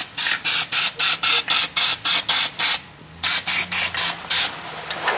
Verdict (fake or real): real